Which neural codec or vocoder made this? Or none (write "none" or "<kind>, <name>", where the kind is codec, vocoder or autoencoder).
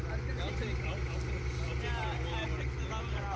none